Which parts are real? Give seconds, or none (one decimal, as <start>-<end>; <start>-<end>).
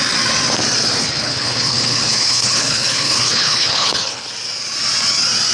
0.0-1.0; 4.3-5.5